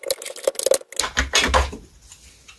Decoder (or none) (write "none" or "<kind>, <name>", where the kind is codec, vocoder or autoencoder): none